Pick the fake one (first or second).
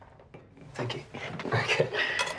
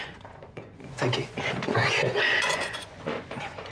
second